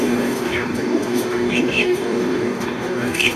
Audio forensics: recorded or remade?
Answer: remade